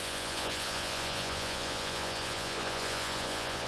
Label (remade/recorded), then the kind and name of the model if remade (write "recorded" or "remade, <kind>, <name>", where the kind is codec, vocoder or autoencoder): remade, vocoder, Vocos